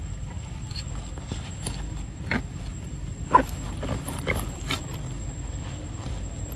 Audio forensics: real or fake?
real